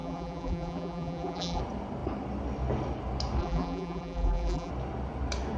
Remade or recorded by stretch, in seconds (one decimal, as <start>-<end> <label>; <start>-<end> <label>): 0.0-1.6 remade; 1.6-3.4 recorded; 3.4-4.7 remade; 4.7-5.6 recorded